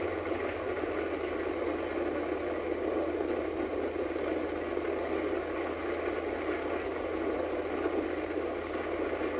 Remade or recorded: recorded